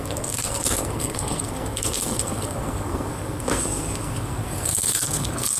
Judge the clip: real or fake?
fake